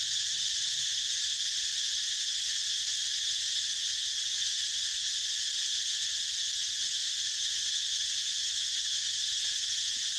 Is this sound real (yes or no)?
no